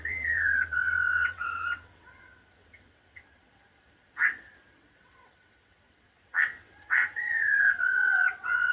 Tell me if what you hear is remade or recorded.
remade